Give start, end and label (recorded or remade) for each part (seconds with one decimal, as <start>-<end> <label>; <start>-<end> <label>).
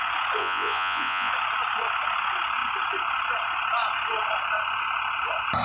0.0-0.4 recorded; 0.4-1.3 remade; 1.3-5.6 recorded